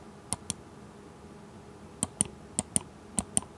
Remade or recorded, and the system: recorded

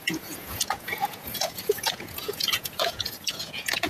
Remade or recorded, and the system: remade, vocoder, Vocos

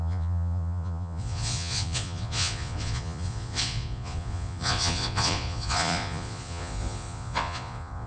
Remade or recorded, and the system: remade, vocoder, Vocos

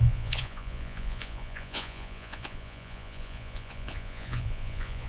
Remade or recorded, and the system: remade, vocoder, Vocos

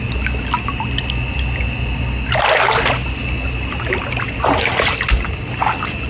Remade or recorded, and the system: recorded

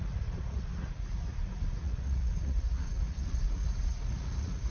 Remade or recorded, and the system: remade, vocoder, Vocos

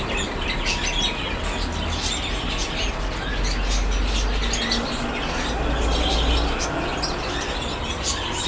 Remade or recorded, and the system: recorded